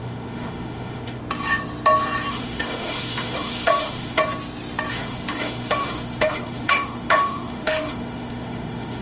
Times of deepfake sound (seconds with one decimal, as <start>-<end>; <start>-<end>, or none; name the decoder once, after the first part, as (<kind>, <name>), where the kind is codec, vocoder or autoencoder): 0.0-1.2 (autoencoder, DAC-VAE); 2.3-4.2; 4.9-9.0